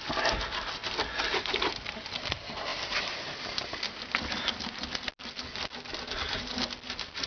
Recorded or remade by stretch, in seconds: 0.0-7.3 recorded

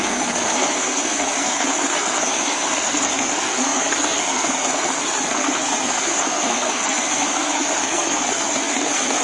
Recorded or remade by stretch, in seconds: 0.0-9.2 remade

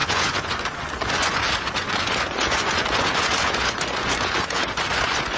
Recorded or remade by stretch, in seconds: 0.0-5.4 remade

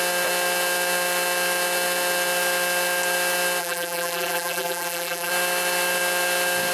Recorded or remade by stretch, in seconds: 0.0-3.6 recorded; 3.6-5.3 remade; 5.3-6.7 recorded

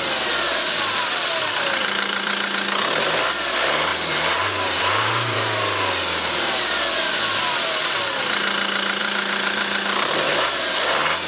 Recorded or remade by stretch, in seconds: 0.0-1.8 recorded; 1.8-2.3 remade; 2.3-3.9 recorded; 3.9-6.8 remade; 6.8-9.0 recorded; 9.0-10.3 remade; 10.3-11.3 recorded

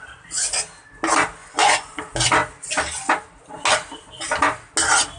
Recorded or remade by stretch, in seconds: 0.0-1.4 recorded; 1.4-2.0 remade; 2.0-5.2 recorded

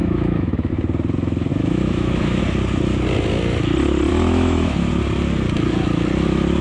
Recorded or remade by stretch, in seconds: 0.0-0.7 remade; 0.7-1.5 recorded; 1.5-2.4 remade; 2.4-4.1 recorded; 4.1-4.9 remade; 4.9-6.6 recorded